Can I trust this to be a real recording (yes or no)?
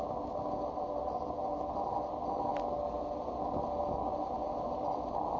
yes